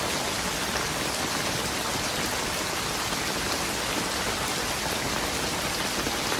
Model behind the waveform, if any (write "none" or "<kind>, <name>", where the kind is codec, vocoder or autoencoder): none